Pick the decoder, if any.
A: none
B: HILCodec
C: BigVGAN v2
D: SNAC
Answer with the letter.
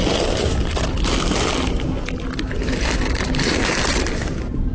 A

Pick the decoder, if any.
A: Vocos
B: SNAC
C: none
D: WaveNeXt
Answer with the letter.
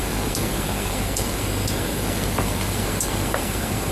B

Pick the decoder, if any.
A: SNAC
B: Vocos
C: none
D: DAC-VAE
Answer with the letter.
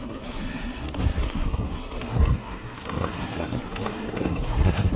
A